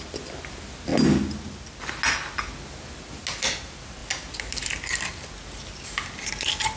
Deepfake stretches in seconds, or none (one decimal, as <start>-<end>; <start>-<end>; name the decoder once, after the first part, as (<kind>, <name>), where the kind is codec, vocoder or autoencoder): none